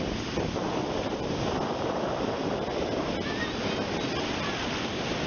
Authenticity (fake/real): real